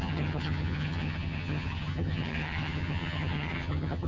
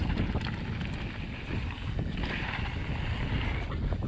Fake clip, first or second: first